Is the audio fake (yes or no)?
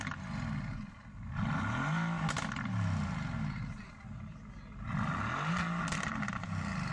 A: no